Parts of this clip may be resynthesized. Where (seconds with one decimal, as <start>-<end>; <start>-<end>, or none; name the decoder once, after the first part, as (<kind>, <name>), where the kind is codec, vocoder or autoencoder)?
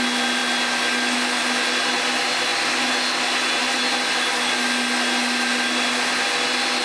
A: none